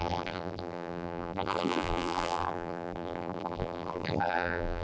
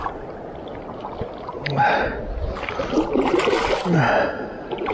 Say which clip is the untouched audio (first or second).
second